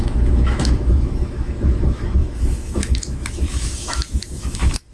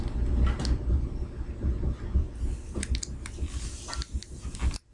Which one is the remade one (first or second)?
first